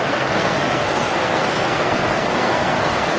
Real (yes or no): no